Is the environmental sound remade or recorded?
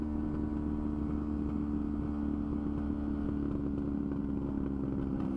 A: recorded